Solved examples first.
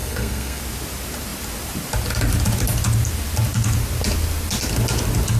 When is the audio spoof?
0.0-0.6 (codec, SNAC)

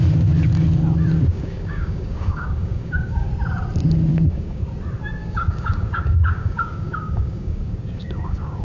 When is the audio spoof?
1.3-3.3 (codec, DAC); 4.1-4.6; 5.2-8.6

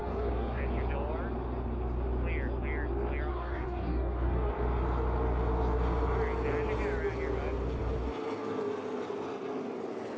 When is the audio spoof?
0.0-0.6 (codec, DAC); 3.3-4.5